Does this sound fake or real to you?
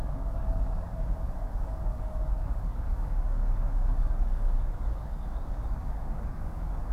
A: fake